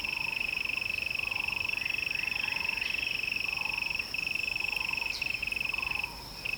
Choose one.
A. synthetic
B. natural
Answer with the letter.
A